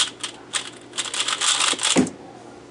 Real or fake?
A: real